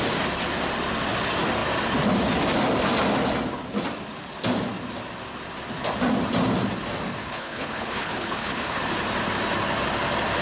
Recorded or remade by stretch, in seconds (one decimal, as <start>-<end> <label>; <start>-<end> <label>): 0.0-7.2 recorded; 7.2-8.8 remade; 8.8-10.4 recorded